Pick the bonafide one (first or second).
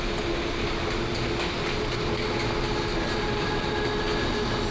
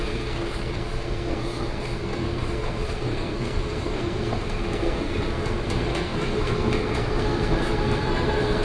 first